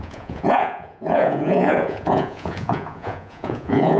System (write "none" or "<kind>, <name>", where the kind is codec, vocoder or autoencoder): vocoder, Vocos